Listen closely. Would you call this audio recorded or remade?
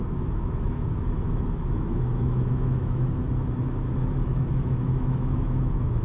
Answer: remade